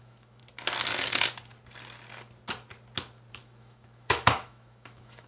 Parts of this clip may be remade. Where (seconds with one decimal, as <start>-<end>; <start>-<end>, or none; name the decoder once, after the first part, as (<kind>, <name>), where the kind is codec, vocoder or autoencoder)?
0.0-0.4 (autoencoder, DAC-VAE); 3.3-5.3